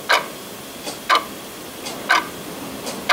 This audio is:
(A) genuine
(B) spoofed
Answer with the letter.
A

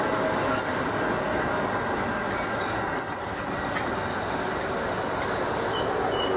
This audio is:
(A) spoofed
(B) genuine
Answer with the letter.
B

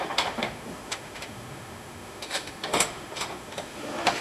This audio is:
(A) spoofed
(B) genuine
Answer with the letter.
A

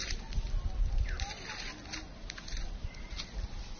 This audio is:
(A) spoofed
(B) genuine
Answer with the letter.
B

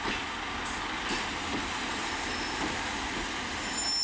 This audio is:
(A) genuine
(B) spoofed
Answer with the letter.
A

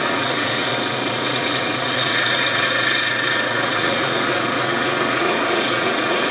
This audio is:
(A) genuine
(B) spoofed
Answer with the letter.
B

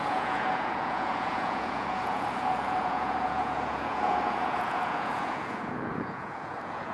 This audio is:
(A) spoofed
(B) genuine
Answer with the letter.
A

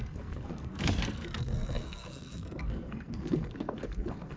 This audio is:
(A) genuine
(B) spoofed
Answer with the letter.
B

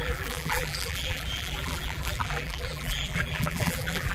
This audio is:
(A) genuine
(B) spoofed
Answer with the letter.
B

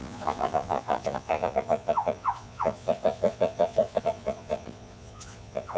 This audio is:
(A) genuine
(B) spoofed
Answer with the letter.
B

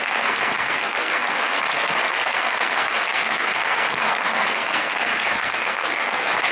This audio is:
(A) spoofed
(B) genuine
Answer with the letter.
A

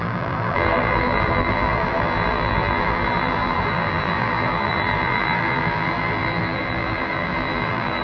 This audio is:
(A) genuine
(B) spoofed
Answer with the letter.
B